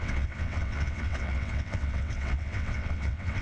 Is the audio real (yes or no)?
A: no